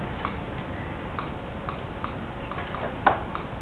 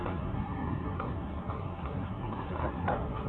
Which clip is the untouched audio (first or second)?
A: first